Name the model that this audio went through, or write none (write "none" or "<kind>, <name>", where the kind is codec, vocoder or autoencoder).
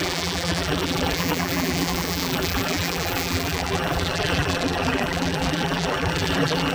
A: vocoder, BigVGAN v2